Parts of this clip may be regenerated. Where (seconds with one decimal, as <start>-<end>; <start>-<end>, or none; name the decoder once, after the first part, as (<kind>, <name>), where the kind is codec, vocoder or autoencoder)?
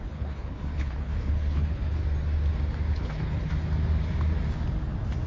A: 0.0-2.0 (codec, HILCodec); 2.9-3.5